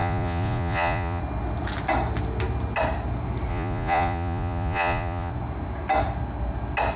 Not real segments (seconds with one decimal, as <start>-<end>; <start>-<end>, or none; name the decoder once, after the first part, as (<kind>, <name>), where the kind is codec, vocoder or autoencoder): 0.0-1.2 (vocoder, Vocos); 3.5-5.3